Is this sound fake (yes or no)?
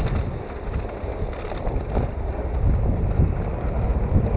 no